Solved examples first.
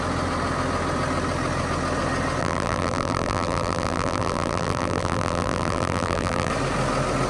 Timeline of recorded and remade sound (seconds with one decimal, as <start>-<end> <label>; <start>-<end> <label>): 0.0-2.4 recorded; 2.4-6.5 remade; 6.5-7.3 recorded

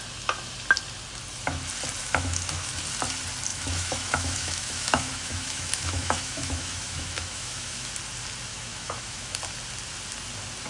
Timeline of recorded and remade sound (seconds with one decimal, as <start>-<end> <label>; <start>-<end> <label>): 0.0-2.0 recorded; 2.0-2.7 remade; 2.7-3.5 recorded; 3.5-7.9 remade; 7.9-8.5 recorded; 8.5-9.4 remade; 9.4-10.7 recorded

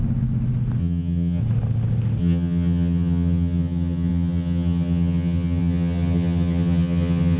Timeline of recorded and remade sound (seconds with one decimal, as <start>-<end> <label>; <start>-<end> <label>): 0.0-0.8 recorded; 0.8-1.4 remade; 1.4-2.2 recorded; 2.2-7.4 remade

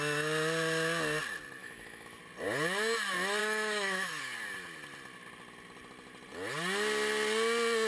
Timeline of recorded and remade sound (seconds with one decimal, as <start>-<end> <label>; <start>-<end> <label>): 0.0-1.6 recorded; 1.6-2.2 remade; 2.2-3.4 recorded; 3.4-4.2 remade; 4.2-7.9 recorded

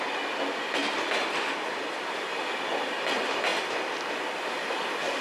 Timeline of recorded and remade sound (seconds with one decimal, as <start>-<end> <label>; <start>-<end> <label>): 0.0-5.2 recorded